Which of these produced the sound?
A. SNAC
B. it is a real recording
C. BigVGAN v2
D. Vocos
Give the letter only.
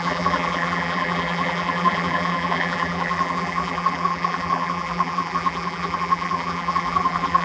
C